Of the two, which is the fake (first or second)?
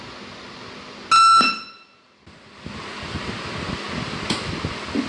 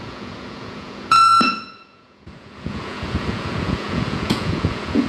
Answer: second